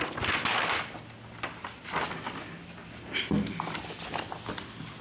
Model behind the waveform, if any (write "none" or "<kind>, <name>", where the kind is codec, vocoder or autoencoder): none